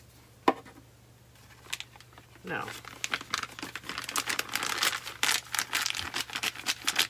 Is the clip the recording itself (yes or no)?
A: yes